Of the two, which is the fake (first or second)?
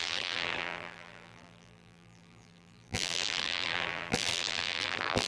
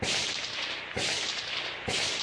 first